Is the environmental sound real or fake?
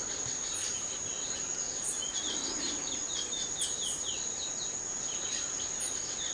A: real